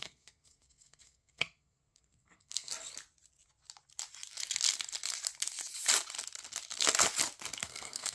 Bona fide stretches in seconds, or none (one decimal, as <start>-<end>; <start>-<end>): 2.7-7.6